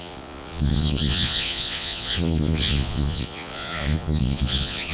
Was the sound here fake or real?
fake